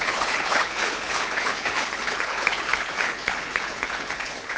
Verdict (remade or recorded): remade